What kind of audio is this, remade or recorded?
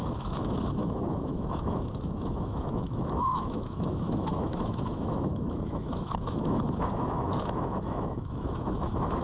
remade